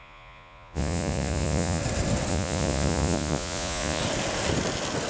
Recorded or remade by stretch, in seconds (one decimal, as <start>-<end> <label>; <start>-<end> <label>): 0.0-1.8 remade; 1.8-2.3 recorded; 2.3-4.0 remade; 4.0-5.1 recorded